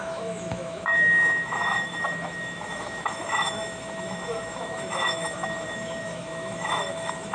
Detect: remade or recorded remade